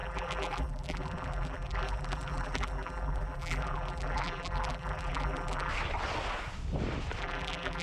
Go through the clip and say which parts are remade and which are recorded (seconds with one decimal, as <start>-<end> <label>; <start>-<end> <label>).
0.0-5.7 remade; 5.7-7.2 recorded; 7.2-7.8 remade

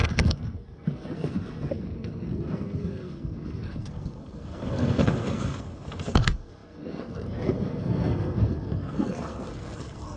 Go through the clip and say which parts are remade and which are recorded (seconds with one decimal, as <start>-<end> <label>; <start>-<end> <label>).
0.0-10.2 remade

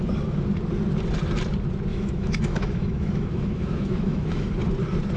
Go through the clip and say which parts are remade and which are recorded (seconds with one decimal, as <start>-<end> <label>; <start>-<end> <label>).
0.0-1.9 recorded; 1.9-4.5 remade; 4.5-5.2 recorded

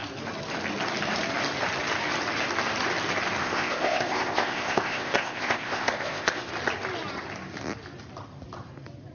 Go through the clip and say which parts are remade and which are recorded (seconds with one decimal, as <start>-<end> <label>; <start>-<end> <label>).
0.0-3.4 recorded; 3.4-6.5 remade; 6.5-9.1 recorded

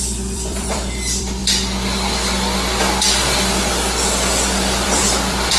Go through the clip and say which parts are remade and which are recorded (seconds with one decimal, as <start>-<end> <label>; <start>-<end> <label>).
0.0-1.4 remade; 1.4-4.3 recorded; 4.3-5.6 remade

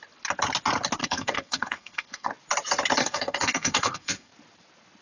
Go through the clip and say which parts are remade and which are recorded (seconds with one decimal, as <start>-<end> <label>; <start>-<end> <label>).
0.0-1.0 recorded; 1.0-2.3 remade; 2.3-3.0 recorded; 3.0-4.3 remade; 4.3-5.0 recorded

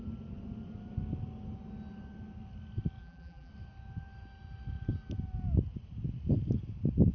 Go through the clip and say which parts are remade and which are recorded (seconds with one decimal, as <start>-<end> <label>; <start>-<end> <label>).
0.0-3.0 recorded; 3.0-3.5 remade; 3.5-7.1 recorded

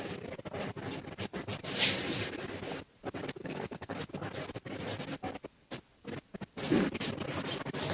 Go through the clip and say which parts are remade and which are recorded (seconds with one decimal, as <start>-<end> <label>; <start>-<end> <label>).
0.0-3.4 recorded; 3.4-4.0 remade; 4.0-7.9 recorded